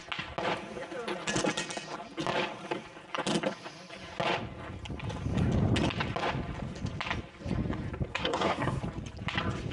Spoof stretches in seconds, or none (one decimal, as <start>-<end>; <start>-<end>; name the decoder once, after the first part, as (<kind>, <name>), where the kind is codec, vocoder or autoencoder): 8.1-8.8 (codec, SNAC)